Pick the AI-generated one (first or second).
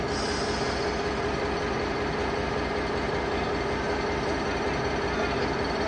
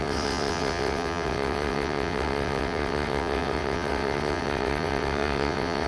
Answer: second